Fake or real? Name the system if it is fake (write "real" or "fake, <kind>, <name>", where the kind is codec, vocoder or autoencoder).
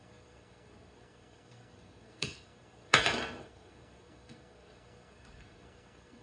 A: fake, codec, SNAC